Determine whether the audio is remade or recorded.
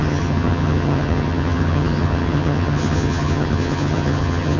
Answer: remade